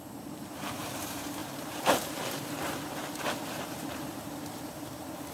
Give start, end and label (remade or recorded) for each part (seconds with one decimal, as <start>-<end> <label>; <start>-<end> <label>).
0.0-5.3 remade